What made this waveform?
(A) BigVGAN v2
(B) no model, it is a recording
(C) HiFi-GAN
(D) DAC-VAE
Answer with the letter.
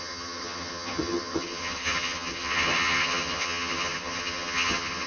C